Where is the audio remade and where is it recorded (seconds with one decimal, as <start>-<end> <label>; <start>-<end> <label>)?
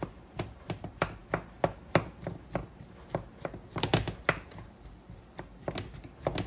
0.0-6.5 recorded